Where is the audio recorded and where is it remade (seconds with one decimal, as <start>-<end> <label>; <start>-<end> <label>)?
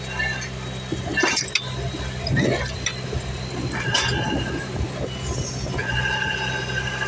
0.0-7.1 recorded